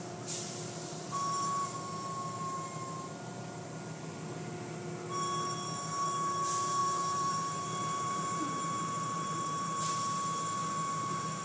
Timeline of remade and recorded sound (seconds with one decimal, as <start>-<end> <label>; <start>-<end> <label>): 0.0-6.8 recorded; 6.8-9.9 remade; 9.9-11.4 recorded

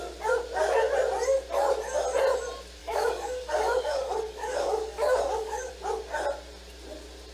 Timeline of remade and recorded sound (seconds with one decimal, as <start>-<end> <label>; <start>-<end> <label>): 0.0-2.8 recorded; 2.8-5.7 remade; 5.7-7.3 recorded

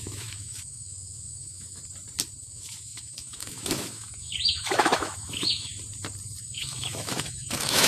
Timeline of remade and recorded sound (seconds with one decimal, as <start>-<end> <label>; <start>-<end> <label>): 0.0-1.8 remade; 1.8-2.4 recorded; 2.4-5.7 remade; 5.7-6.4 recorded; 6.4-7.9 remade

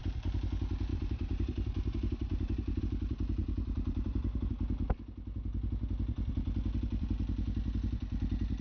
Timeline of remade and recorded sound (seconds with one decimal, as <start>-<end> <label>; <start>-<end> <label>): 0.0-0.9 recorded; 0.9-2.8 remade; 2.8-3.4 recorded; 3.4-4.5 remade; 4.5-8.6 recorded

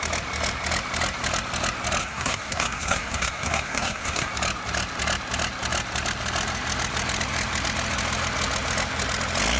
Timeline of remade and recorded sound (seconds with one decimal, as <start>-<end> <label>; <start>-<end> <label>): 0.0-2.0 recorded; 2.0-4.3 remade; 4.3-9.6 recorded

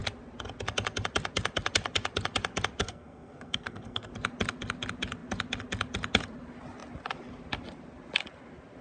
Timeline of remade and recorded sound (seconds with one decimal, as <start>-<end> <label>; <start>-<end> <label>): 0.0-2.8 recorded; 2.8-4.1 remade; 4.1-8.8 recorded

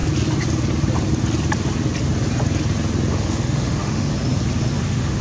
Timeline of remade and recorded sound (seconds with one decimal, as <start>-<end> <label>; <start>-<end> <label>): 0.0-3.1 recorded; 3.1-4.1 remade; 4.1-4.8 recorded; 4.8-5.2 remade